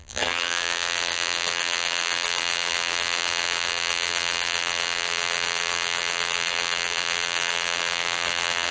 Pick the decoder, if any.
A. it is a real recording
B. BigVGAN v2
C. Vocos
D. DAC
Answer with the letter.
B